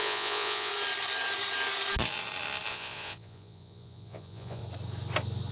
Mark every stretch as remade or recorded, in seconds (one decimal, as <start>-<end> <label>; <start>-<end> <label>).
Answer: 0.0-0.7 remade; 0.7-2.7 recorded; 2.7-4.6 remade; 4.6-5.5 recorded